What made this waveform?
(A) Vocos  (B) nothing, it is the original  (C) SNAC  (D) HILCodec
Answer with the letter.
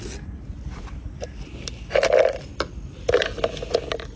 B